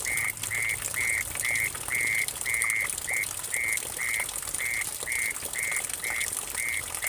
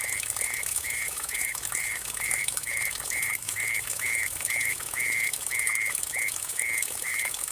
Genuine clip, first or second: first